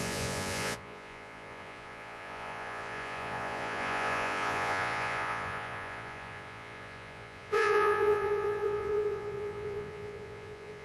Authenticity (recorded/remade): remade